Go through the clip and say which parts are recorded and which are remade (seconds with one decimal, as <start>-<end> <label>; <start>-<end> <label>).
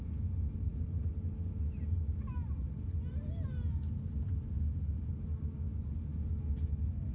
0.0-7.1 recorded